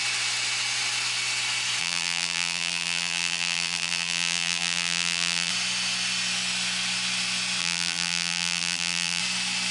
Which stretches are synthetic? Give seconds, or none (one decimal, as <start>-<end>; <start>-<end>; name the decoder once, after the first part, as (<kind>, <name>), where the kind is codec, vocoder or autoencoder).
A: 1.8-5.5 (vocoder, BigVGAN v2); 7.6-9.2